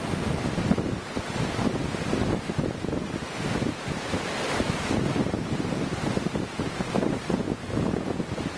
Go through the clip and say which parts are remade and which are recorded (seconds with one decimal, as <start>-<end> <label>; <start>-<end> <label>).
0.0-3.2 recorded; 3.2-7.4 remade; 7.4-8.6 recorded